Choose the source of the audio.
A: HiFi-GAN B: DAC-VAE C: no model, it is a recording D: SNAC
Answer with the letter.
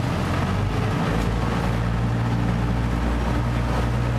C